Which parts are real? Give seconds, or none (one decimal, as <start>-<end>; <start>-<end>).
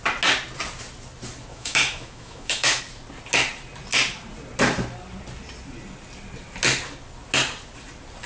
0.0-1.5; 2.8-8.3